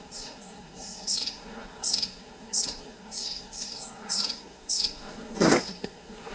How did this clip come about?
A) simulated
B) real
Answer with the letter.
A